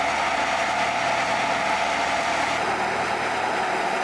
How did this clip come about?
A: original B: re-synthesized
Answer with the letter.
A